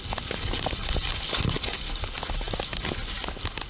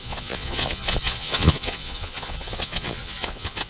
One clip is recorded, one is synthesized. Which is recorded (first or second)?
first